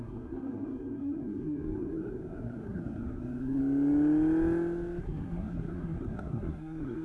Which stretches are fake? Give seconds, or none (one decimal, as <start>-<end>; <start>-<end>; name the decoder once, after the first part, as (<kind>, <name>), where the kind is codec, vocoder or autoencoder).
0.0-3.6 (codec, SNAC); 5.0-7.0